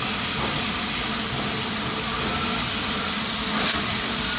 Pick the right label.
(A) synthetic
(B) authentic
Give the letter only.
B